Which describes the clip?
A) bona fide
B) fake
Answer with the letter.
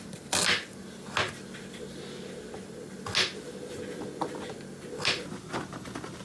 A